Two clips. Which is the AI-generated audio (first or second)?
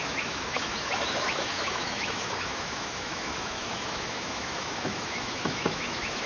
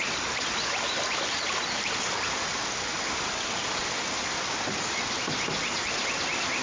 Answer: first